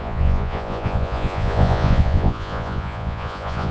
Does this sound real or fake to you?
fake